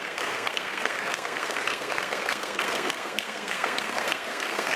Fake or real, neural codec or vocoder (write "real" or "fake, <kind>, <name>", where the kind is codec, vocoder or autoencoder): fake, codec, SNAC